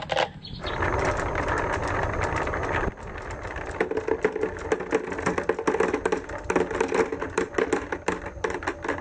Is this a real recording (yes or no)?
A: yes